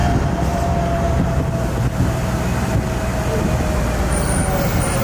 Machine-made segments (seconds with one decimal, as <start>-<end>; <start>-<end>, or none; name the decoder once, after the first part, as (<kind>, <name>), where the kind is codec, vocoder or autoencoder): none